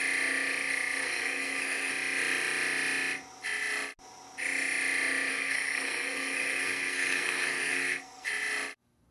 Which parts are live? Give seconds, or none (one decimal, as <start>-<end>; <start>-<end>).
0.0-1.0; 1.9-5.3; 8.3-9.1